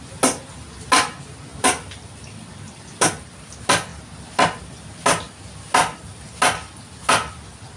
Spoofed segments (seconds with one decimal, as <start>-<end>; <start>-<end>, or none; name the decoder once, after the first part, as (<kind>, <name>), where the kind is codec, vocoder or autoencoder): none